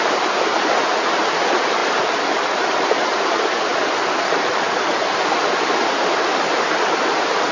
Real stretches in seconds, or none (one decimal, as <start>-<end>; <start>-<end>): 0.0-0.5; 1.1-7.5